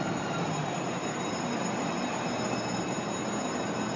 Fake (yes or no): no